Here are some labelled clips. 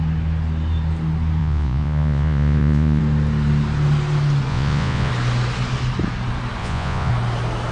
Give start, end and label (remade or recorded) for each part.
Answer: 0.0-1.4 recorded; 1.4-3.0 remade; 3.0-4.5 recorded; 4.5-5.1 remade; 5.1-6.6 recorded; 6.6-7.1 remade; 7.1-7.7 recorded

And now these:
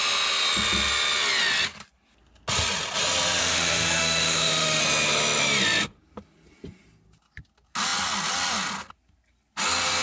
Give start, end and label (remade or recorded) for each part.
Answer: 0.0-3.4 recorded; 3.4-4.8 remade; 4.8-10.0 recorded

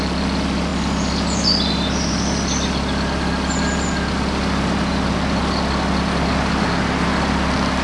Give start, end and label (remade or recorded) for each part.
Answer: 0.0-7.8 recorded

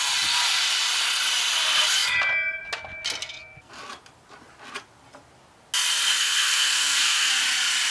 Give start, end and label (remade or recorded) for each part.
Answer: 0.0-3.2 recorded; 3.2-3.7 remade; 3.7-6.2 recorded; 6.2-7.3 remade; 7.3-7.9 recorded